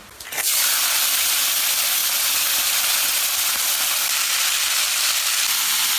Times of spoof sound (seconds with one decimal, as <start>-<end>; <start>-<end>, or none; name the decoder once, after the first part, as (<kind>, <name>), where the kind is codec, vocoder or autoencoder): none